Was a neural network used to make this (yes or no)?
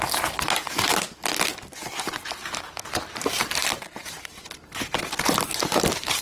yes